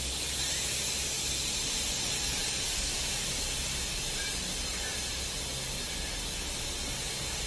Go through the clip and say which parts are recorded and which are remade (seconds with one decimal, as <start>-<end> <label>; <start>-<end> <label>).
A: 0.0-7.5 recorded

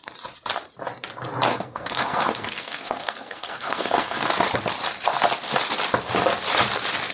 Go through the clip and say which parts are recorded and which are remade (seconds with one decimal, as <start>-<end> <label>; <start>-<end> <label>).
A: 0.0-1.5 recorded; 1.5-4.3 remade; 4.3-7.1 recorded

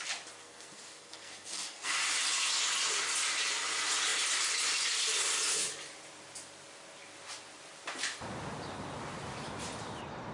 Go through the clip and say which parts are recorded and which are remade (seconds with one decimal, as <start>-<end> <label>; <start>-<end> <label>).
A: 0.0-0.4 recorded; 0.4-1.9 remade; 1.9-10.3 recorded

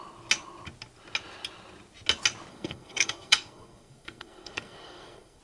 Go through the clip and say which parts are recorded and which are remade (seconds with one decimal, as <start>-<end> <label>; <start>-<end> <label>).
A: 0.0-2.5 recorded; 2.5-5.4 remade

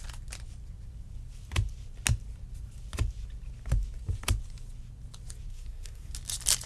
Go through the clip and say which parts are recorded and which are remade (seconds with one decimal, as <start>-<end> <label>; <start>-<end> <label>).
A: 0.0-5.5 recorded; 5.5-6.1 remade; 6.1-6.7 recorded